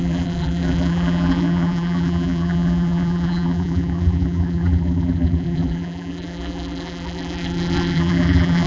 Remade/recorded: remade